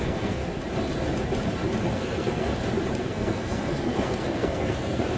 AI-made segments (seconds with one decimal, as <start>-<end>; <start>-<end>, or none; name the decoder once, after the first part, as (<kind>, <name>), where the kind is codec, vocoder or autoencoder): 0.0-0.4 (codec, SNAC); 1.8-2.5; 3.0-5.2